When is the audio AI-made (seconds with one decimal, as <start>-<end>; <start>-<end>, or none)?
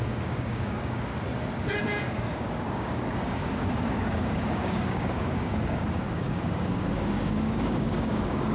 0.0-1.1; 1.8-8.5